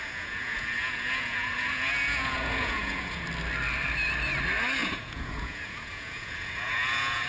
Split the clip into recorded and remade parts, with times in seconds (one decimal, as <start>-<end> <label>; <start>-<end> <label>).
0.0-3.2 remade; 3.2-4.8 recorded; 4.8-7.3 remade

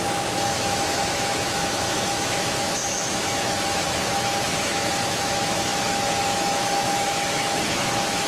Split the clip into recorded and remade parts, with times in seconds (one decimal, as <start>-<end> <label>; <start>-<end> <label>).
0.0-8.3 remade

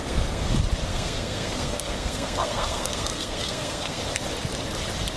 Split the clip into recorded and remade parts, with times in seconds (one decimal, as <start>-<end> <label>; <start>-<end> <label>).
0.0-0.5 remade; 0.5-0.9 recorded; 0.9-4.0 remade; 4.0-5.2 recorded

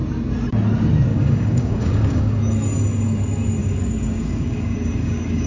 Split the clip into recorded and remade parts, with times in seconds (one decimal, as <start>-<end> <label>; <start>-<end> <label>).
0.0-1.1 recorded; 1.1-2.4 remade; 2.4-3.6 recorded; 3.6-5.5 remade

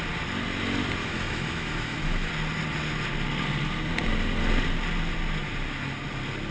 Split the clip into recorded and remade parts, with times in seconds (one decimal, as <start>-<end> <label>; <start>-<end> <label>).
0.0-1.0 recorded; 1.0-2.3 remade; 2.3-6.5 recorded